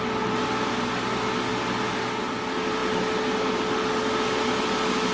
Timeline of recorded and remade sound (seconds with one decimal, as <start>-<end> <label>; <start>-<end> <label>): 0.0-5.1 recorded